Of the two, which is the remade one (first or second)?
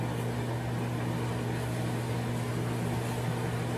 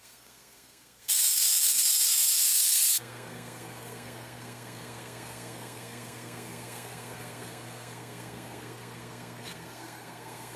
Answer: second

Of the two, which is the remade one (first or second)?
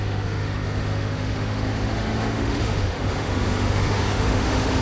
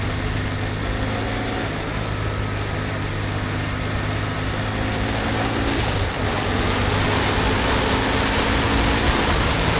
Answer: first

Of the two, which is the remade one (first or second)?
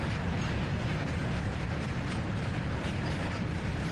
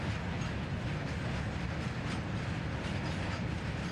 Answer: first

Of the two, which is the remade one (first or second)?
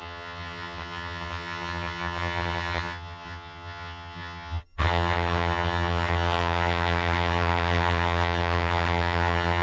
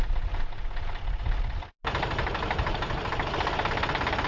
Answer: first